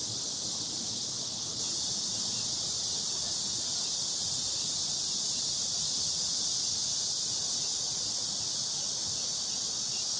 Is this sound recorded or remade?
recorded